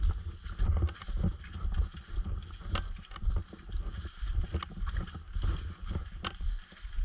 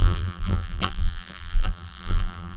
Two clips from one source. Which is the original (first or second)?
first